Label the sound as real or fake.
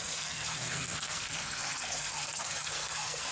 fake